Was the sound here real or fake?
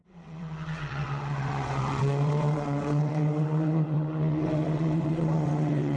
fake